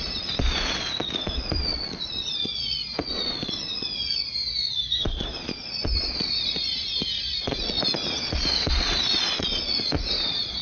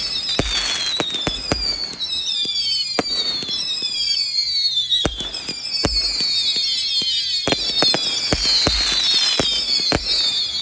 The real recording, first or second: second